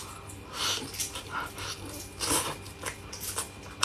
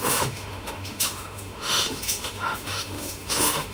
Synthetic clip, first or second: second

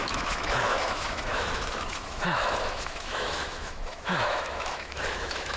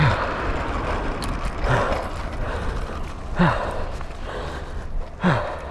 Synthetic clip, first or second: first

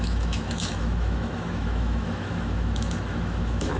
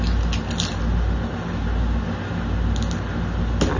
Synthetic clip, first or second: first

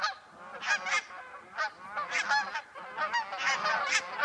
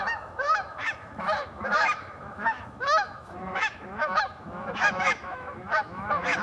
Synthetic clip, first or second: second